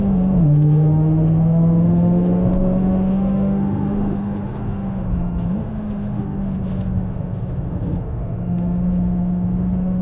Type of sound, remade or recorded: remade